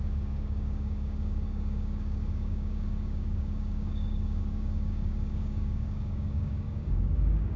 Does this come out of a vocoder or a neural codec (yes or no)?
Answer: yes